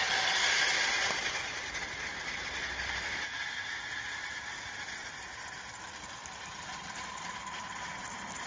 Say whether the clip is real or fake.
real